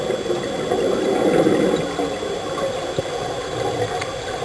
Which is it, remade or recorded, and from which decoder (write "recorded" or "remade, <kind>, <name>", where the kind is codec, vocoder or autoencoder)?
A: recorded